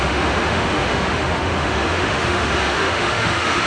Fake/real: fake